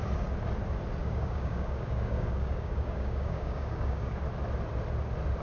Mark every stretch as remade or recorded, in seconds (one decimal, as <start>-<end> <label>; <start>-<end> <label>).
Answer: 0.0-1.0 recorded; 1.0-4.2 remade; 4.2-5.4 recorded